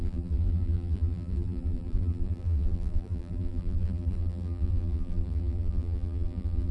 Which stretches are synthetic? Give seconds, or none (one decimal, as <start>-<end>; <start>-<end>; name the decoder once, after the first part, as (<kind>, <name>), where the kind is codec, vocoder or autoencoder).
0.0-6.7 (vocoder, BigVGAN v2)